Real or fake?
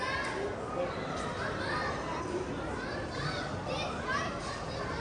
real